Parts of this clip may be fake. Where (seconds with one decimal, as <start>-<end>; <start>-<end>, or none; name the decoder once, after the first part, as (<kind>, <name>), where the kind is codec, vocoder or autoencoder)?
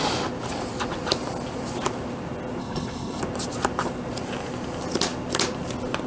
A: 2.6-3.2 (codec, HILCodec)